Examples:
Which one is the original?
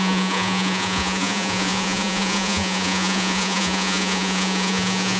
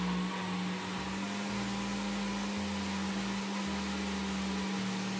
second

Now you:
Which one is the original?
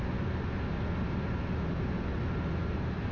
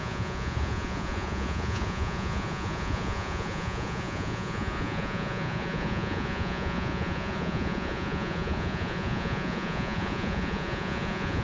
first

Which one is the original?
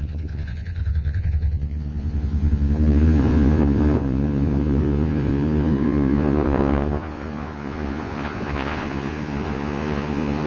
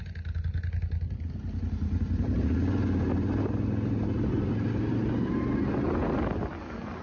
second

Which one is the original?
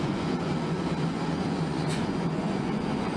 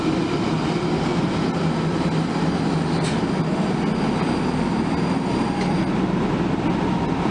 second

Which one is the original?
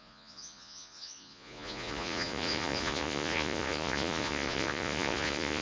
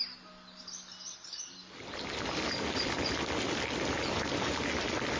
second